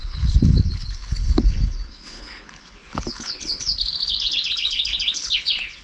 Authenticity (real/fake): fake